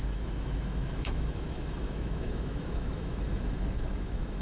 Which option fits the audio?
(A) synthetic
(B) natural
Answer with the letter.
A